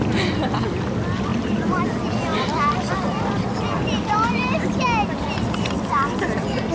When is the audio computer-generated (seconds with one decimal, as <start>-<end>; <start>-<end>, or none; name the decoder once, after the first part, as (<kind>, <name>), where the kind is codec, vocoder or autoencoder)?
1.3-1.8 (vocoder, BigVGAN v2); 2.3-4.8